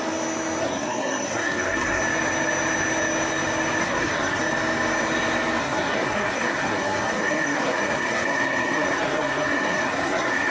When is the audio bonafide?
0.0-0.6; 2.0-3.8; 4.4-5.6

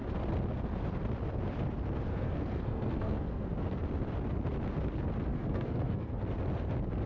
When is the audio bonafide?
0.0-2.1; 3.8-5.3; 6.2-7.1

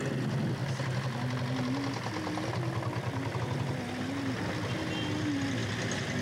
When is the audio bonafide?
0.0-6.2

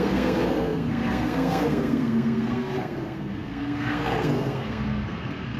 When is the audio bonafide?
none

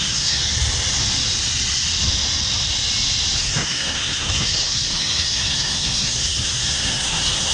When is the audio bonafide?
0.4-3.4

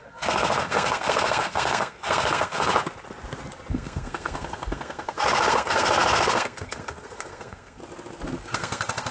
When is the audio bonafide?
2.7-3.7; 7.8-8.4